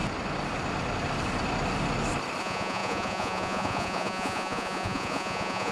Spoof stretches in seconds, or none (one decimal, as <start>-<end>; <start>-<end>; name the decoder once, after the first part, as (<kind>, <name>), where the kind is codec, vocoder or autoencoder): 2.4-5.7 (vocoder, Vocos)